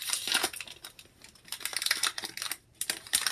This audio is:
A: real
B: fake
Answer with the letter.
A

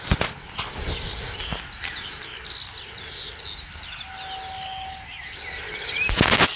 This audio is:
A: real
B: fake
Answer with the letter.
A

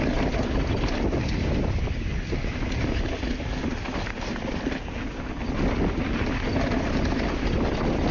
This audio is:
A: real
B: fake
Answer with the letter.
A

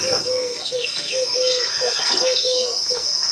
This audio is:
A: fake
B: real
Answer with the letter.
A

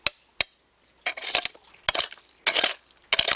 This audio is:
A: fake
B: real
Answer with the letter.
B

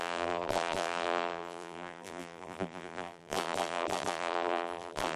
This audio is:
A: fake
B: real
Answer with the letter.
A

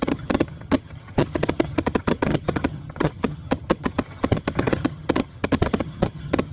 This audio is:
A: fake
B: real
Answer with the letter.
A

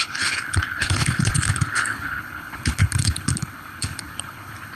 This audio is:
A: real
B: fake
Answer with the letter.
B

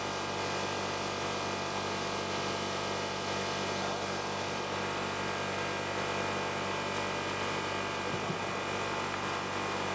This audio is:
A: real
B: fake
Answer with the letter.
A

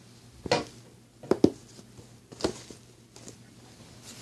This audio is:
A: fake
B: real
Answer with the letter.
B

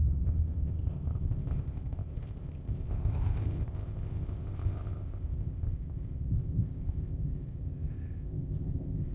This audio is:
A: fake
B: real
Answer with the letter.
A